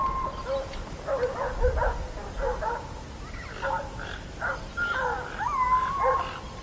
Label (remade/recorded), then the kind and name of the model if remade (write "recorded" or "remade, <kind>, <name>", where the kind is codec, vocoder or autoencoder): recorded